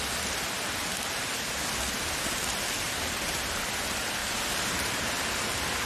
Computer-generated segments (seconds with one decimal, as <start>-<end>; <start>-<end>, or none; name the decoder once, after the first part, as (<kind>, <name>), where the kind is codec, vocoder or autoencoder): 2.4-3.2 (vocoder, BigVGAN v2); 4.2-5.0